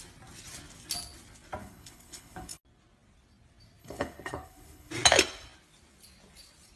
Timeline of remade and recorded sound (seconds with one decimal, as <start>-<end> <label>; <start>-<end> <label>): 0.0-1.6 recorded; 1.6-2.6 remade; 2.6-3.8 recorded; 3.8-4.9 remade; 4.9-6.8 recorded